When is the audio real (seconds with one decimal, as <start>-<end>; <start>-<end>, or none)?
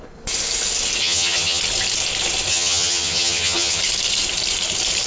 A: 0.0-1.0; 1.6-2.5; 3.8-5.1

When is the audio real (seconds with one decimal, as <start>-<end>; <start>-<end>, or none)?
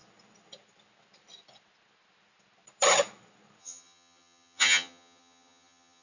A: 0.0-3.6